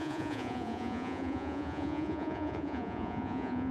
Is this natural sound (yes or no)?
no